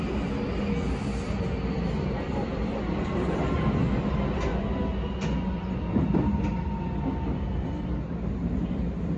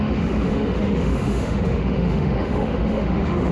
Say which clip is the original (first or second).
first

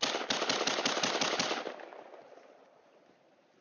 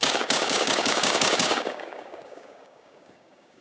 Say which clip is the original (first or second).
first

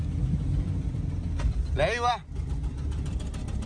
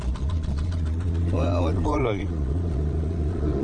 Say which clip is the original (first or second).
first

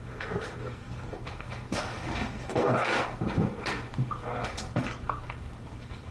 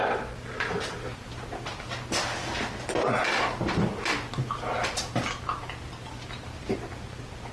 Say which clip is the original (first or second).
second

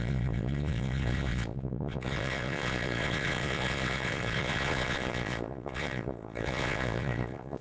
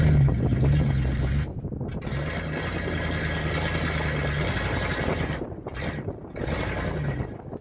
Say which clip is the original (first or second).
second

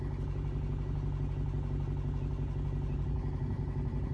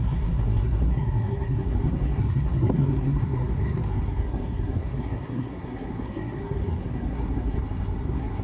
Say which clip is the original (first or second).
first